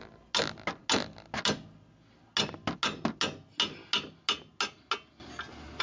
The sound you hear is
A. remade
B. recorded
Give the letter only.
B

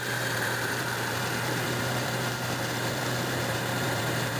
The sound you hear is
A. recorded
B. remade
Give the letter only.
B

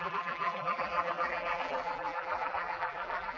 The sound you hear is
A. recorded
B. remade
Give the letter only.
B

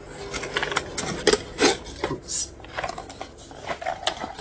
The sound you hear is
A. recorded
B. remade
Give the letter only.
A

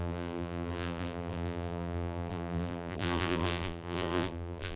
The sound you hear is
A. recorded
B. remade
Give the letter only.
B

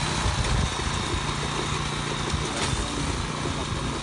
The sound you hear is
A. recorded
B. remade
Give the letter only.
A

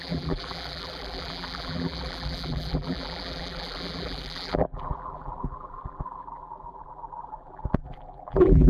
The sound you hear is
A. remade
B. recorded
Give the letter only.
A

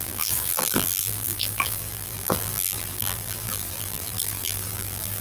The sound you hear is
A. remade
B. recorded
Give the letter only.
A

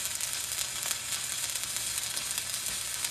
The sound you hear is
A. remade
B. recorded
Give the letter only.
B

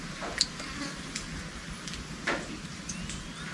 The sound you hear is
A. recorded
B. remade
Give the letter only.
A